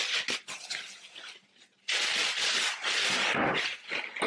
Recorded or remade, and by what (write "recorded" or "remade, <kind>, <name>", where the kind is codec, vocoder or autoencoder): recorded